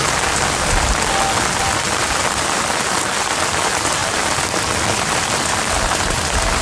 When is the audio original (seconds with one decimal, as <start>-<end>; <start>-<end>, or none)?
0.0-6.6